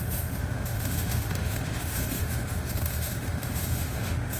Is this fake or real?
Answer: fake